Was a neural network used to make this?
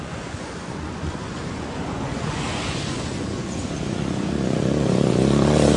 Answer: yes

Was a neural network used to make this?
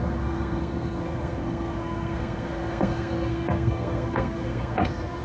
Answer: yes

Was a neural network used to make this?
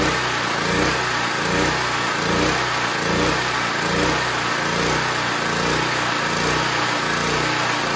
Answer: no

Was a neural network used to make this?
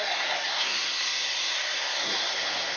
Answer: yes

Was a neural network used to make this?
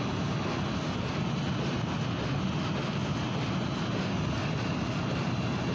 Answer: no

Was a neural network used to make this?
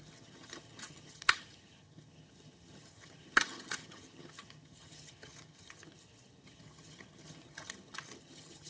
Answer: yes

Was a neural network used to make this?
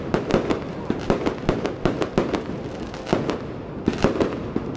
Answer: no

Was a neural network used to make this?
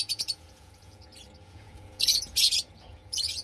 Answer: yes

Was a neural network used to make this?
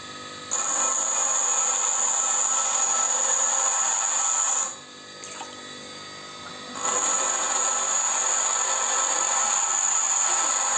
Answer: no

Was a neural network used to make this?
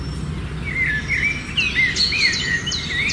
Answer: no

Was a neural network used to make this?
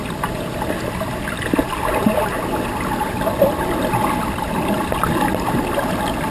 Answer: no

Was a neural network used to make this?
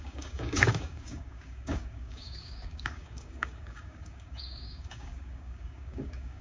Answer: yes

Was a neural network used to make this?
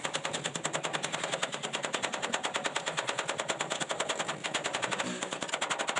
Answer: no